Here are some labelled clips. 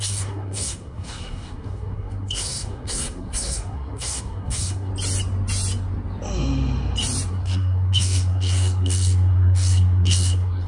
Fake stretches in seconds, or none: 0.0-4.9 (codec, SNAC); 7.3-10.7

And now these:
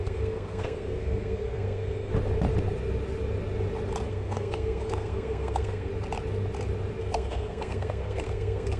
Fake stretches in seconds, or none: 0.0-2.1 (codec, SNAC); 4.1-5.9; 7.0-8.8